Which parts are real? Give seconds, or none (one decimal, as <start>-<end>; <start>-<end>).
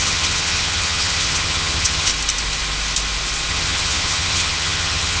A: 2.1-3.5